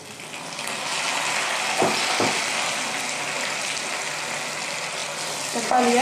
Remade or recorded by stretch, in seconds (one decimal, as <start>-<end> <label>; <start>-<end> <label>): 0.0-6.0 recorded

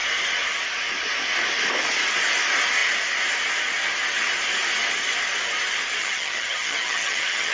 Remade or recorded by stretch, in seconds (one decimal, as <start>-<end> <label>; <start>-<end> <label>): 0.0-6.0 recorded; 6.0-7.5 remade

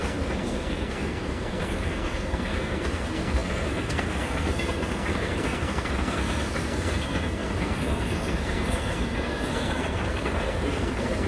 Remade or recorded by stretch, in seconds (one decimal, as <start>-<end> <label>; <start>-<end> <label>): 0.0-11.3 remade

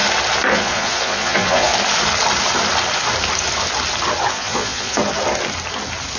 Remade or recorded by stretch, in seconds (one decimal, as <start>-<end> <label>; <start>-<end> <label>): 0.0-0.5 recorded; 0.5-1.7 remade; 1.7-4.3 recorded; 4.3-5.0 remade; 5.0-6.2 recorded